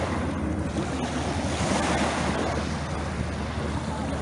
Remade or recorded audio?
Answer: recorded